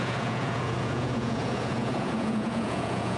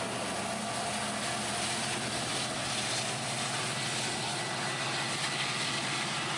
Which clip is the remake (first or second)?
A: first